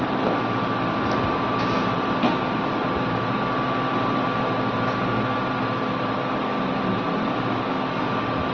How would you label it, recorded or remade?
recorded